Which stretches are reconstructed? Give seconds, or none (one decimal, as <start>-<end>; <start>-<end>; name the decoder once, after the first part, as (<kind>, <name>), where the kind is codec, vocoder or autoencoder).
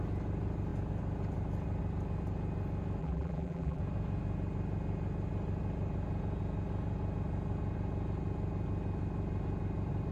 3.0-3.8 (vocoder, BigVGAN v2)